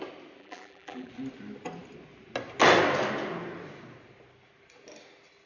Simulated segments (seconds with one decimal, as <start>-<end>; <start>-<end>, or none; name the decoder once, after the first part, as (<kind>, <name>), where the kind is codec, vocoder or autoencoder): 0.4-1.1 (vocoder, BigVGAN v2)